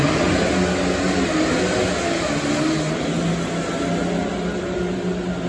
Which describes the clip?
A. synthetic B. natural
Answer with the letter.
B